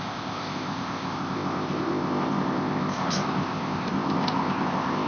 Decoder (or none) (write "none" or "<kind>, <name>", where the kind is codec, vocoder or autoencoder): codec, ZipCodec